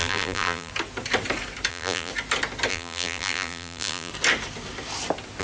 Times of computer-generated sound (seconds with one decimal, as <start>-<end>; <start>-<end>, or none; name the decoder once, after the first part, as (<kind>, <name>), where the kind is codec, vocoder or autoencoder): 0.0-0.7 (vocoder, BigVGAN v2); 1.7-2.1; 2.7-4.1